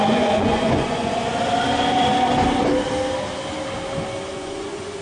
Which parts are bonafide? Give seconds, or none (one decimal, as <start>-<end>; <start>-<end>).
1.3-4.3